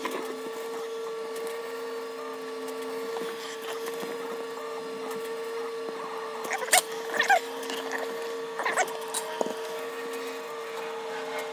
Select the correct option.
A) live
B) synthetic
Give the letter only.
A